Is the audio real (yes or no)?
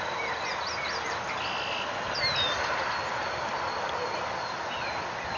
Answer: yes